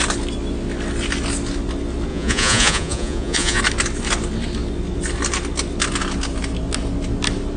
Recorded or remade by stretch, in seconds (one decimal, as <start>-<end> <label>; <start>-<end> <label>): 0.0-2.1 recorded; 2.1-3.6 remade; 3.6-7.6 recorded